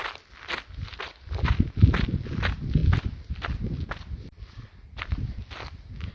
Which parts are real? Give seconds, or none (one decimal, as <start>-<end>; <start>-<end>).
0.0-6.1